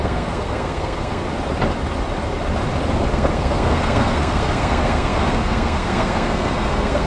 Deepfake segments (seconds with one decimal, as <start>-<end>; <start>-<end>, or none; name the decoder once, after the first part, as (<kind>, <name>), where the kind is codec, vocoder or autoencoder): 0.0-1.2 (codec, SNAC); 3.1-7.1